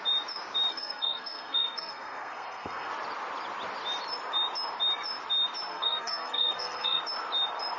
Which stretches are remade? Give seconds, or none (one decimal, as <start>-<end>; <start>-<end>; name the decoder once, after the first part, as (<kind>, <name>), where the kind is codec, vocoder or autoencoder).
0.7-2.9 (codec, SNAC); 5.7-7.0